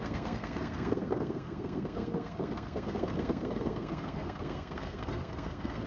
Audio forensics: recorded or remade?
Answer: remade